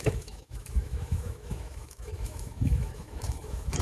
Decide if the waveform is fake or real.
fake